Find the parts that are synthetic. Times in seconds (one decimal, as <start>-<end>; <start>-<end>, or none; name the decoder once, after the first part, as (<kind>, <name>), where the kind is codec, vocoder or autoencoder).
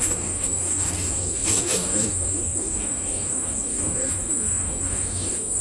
0.0-5.6 (codec, DAC)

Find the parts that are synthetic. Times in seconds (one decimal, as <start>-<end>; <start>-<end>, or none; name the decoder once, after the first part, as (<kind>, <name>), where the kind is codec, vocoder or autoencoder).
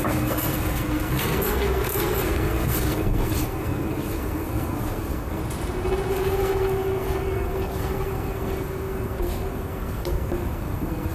0.0-5.4 (codec, SNAC); 6.1-11.1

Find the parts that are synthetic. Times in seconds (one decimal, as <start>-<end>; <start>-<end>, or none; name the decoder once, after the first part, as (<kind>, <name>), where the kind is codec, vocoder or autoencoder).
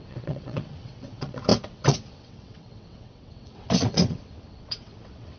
0.0-5.4 (vocoder, WaveNeXt)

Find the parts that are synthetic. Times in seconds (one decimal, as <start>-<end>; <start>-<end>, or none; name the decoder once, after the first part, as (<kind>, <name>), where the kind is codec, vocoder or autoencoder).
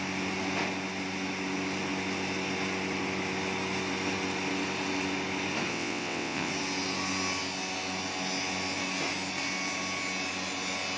5.7-6.5 (vocoder, WaveNeXt)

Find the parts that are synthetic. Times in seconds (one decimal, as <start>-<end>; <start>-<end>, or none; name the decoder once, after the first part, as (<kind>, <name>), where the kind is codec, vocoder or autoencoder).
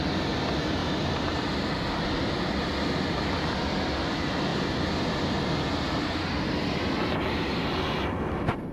0.8-1.4 (vocoder, BigVGAN v2)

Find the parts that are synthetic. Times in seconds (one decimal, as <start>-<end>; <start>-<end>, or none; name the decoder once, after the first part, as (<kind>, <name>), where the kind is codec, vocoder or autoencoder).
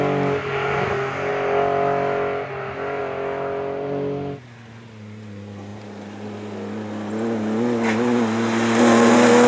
none